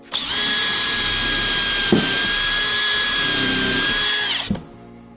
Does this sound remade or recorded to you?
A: recorded